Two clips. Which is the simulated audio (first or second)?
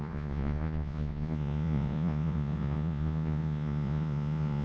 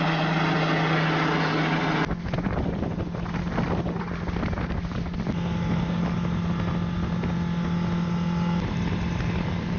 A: first